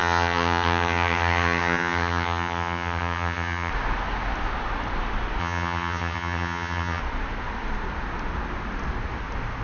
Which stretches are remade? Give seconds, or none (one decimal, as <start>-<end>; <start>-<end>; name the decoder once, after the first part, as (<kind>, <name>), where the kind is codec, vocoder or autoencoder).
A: 0.0-3.7 (vocoder, HiFi-GAN); 5.4-7.0

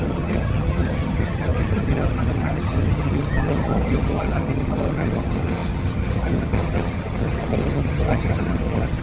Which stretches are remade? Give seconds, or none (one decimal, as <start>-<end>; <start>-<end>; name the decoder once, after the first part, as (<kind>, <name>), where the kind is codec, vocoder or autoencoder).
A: 0.0-9.0 (vocoder, HiFi-GAN)

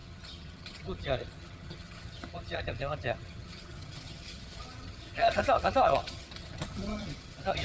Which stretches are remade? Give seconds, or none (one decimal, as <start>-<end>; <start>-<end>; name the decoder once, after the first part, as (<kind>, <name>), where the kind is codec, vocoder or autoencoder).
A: 0.0-7.6 (vocoder, HiFi-GAN)

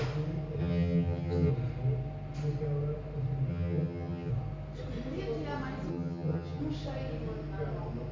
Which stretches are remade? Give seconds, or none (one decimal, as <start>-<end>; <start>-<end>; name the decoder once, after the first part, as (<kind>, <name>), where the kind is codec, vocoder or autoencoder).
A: 0.6-1.5 (vocoder, HiFi-GAN); 3.5-4.3; 5.9-6.6